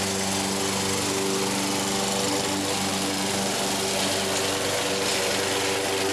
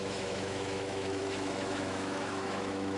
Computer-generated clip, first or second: second